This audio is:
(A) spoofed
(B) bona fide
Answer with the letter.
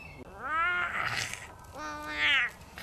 B